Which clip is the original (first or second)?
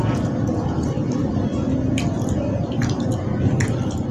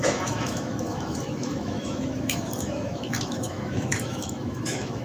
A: first